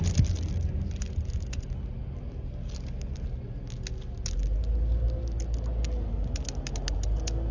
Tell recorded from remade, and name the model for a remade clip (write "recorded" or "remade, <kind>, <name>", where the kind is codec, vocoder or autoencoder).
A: recorded